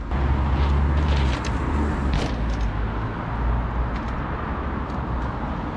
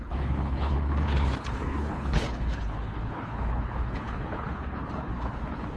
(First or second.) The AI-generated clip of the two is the second